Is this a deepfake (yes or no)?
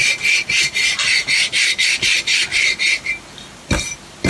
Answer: no